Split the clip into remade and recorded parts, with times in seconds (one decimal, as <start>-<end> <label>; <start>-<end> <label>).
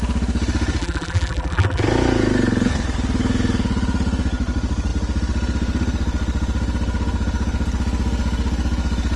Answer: 0.0-0.8 recorded; 0.8-1.8 remade; 1.8-9.2 recorded